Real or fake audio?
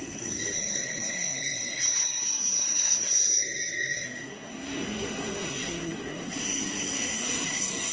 fake